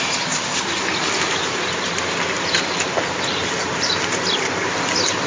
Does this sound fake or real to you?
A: real